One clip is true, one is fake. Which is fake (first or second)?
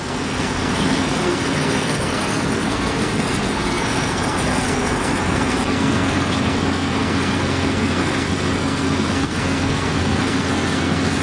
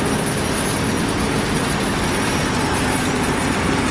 first